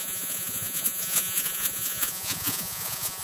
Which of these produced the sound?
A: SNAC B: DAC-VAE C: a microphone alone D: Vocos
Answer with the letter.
D